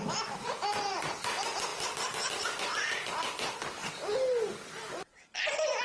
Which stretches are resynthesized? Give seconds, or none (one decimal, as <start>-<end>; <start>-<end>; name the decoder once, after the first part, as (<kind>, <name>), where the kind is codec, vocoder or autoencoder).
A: 1.7-2.4 (vocoder, BigVGAN v2); 3.8-5.8